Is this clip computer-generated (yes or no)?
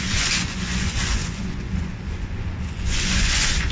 yes